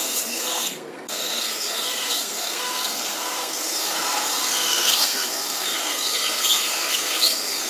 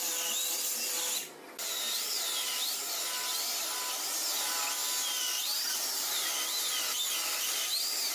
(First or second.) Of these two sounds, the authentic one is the second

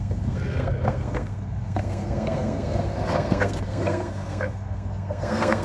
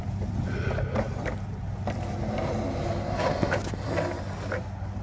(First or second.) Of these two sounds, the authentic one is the second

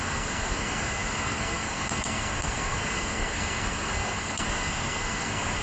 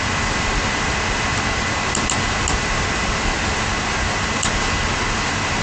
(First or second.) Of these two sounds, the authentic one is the second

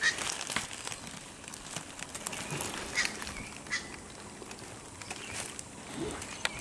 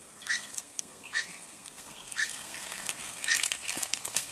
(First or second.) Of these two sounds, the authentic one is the first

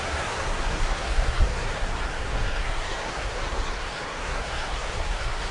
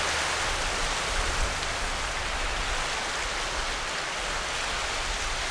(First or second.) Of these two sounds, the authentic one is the second